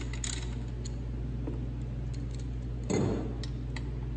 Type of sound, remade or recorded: recorded